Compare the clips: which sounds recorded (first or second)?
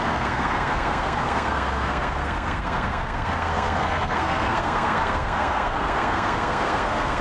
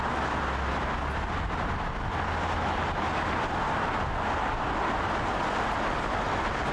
second